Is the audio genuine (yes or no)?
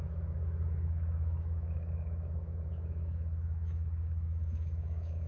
no